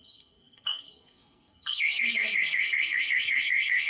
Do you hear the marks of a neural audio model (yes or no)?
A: yes